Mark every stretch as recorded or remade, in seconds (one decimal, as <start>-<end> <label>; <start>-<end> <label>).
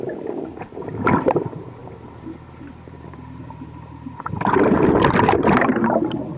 0.0-1.8 recorded; 1.8-4.9 remade; 4.9-6.4 recorded